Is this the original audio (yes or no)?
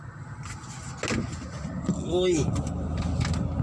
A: yes